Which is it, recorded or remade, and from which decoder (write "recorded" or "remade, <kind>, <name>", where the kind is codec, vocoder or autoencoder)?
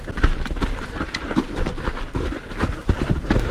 recorded